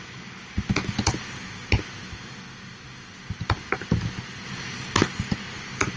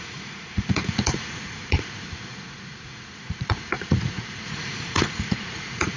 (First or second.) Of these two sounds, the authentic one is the first